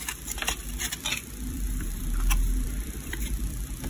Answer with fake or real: fake